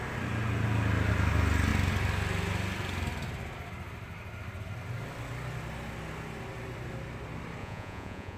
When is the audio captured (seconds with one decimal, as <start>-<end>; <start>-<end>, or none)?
0.0-7.6